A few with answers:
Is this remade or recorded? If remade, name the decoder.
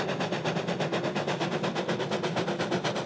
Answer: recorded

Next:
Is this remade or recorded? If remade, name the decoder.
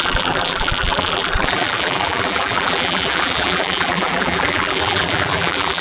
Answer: remade, vocoder, BigVGAN v2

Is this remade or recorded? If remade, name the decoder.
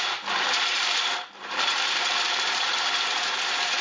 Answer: remade, vocoder, BigVGAN v2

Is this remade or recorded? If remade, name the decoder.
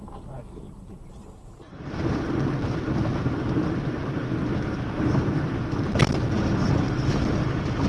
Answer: remade, vocoder, BigVGAN v2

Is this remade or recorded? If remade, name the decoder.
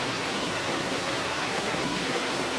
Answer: remade, codec, SNAC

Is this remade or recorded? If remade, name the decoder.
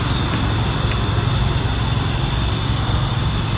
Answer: recorded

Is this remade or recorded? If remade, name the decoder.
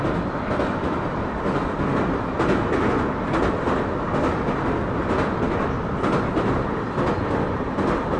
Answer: recorded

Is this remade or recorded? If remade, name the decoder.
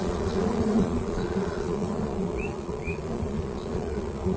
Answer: remade, vocoder, Vocos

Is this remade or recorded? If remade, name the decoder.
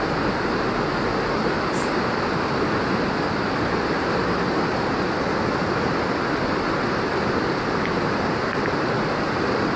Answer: recorded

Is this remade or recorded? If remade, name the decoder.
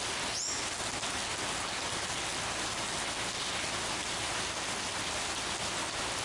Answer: recorded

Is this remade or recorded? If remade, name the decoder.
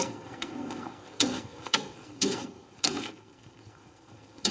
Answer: remade, codec, SNAC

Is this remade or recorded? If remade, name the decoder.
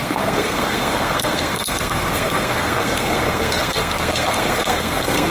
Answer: remade, codec, SNAC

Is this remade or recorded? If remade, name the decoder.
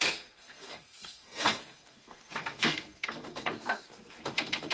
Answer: remade, codec, SNAC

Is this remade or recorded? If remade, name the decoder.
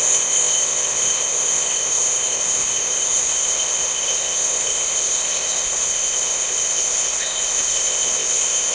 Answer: remade, codec, ZipCodec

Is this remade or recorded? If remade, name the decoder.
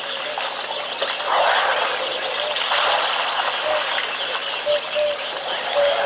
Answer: recorded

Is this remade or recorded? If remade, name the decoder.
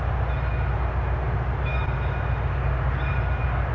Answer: recorded